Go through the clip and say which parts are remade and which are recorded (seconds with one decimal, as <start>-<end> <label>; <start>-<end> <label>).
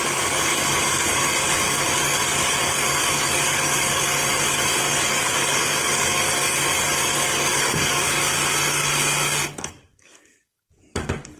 0.0-11.4 remade